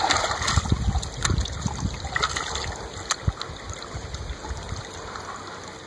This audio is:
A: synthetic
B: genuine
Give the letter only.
B